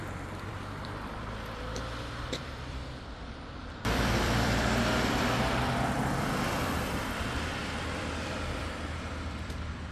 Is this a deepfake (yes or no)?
yes